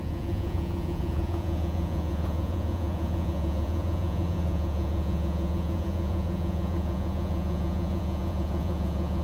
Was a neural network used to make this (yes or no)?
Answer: yes